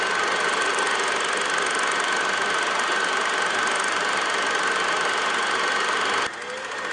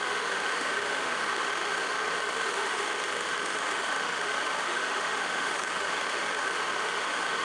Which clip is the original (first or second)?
first